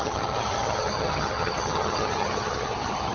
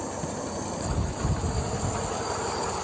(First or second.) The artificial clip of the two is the first